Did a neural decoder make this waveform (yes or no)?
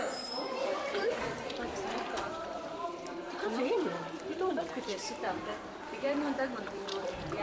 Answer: yes